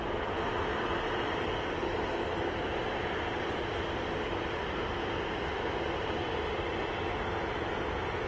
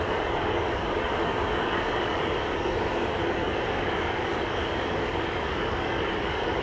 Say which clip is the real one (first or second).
first